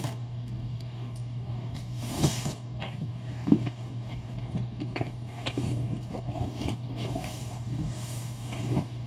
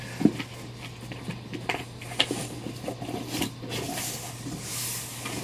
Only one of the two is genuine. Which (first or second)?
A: second